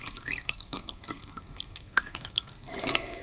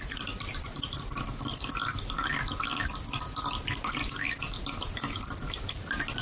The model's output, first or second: first